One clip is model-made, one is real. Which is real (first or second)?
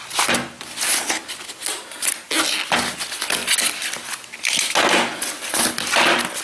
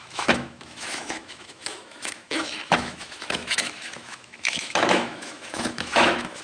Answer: first